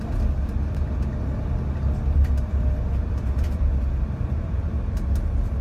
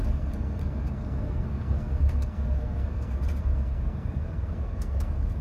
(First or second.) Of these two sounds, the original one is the first